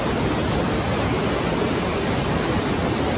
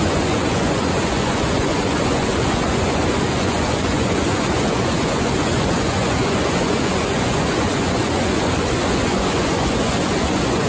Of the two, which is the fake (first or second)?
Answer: second